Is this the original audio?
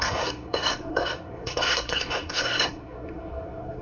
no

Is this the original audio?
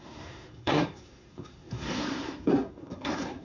no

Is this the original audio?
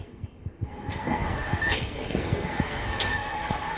no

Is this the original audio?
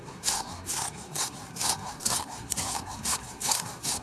no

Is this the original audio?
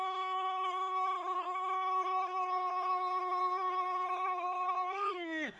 no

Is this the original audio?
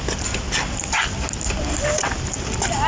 yes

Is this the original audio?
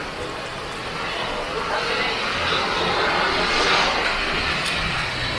yes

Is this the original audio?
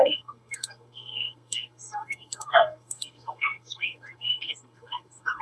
no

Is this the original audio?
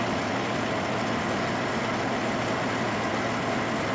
yes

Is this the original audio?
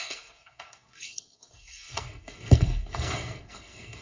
no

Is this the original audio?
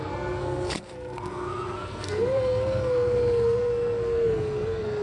no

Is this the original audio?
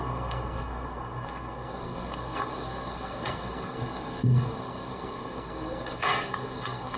no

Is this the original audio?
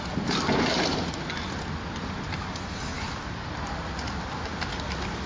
yes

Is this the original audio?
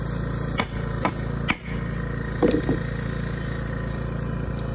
yes